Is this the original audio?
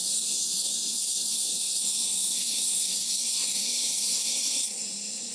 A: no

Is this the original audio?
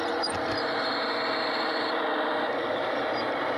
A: yes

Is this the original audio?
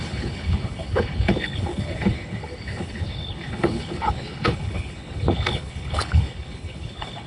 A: no